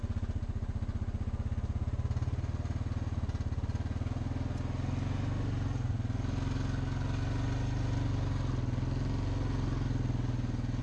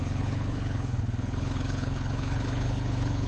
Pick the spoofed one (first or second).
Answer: second